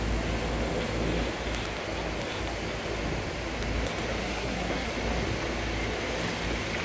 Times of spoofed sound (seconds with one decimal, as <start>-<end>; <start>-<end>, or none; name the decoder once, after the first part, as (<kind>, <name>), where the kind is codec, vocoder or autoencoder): 4.2-4.9 (codec, SNAC)